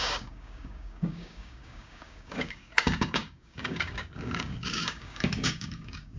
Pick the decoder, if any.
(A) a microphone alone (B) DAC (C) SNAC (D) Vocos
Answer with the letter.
B